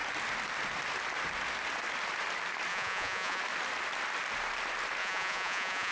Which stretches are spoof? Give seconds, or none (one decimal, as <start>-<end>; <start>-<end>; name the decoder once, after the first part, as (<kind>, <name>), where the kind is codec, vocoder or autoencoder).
2.7-3.4 (vocoder, Vocos); 5.0-5.9

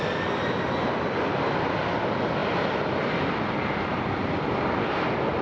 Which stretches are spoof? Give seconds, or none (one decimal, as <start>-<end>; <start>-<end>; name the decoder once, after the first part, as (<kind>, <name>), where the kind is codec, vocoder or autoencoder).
none

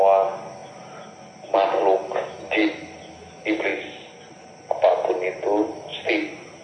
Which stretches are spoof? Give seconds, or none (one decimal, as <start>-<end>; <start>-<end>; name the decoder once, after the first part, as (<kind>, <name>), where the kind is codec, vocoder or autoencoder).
none

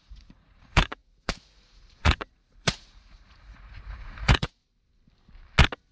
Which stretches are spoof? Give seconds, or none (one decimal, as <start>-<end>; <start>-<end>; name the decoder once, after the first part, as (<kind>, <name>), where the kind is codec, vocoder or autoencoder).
0.0-4.6 (vocoder, Vocos)

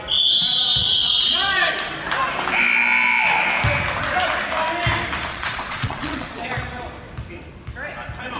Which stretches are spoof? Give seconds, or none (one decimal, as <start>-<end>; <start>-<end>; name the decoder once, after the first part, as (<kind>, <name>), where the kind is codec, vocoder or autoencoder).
0.8-1.7 (vocoder, Vocos); 5.3-6.4